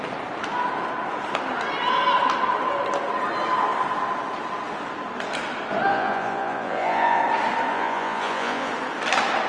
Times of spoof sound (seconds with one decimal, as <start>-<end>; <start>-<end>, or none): 5.9-7.2; 7.7-8.7